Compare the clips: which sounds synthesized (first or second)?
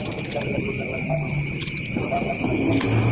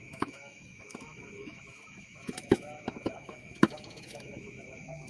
second